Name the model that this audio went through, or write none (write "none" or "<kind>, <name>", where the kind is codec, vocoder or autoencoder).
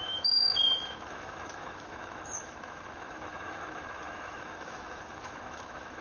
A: autoencoder, DAC-VAE